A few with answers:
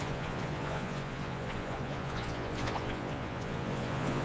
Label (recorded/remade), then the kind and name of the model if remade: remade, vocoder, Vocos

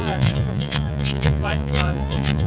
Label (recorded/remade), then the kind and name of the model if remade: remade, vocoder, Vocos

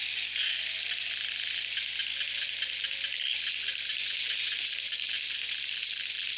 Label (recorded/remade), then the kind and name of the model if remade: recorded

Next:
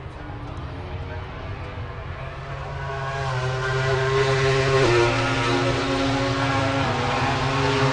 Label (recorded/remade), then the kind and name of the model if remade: recorded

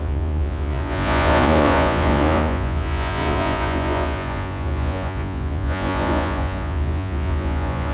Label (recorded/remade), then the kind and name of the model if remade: remade, vocoder, Vocos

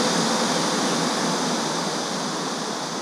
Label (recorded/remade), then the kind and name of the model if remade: recorded